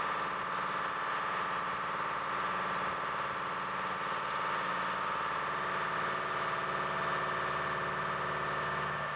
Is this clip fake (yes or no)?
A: no